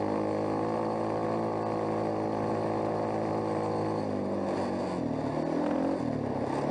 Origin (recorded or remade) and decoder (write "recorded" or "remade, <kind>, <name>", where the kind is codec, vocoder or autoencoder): recorded